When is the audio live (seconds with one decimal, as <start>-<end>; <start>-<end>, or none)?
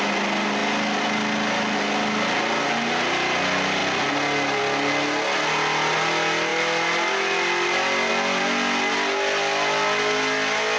0.0-10.8